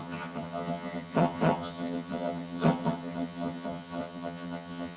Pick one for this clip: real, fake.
fake